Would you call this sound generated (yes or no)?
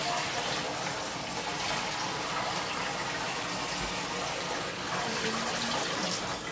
no